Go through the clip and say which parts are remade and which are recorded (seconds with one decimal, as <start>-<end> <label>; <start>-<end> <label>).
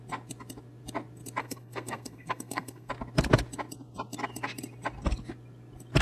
0.0-1.4 recorded; 1.4-2.9 remade; 2.9-6.0 recorded